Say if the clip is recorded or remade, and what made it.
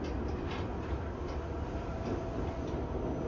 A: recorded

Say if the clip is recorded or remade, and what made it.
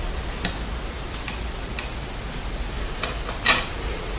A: recorded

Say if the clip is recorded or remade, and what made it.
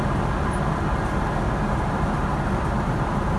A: recorded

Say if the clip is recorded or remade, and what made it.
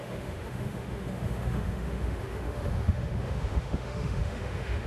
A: remade, autoencoder, DAC-VAE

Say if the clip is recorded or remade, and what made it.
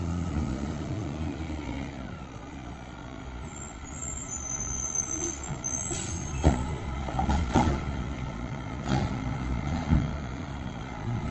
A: remade, vocoder, Vocos